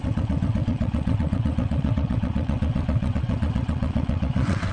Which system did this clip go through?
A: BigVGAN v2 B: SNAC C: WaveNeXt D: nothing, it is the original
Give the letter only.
C